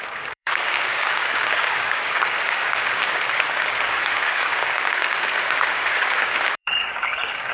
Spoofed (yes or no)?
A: yes